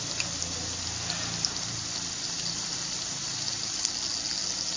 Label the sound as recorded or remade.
recorded